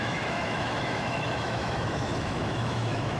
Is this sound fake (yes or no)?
yes